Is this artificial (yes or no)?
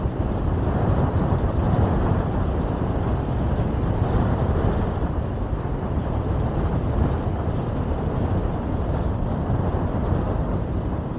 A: no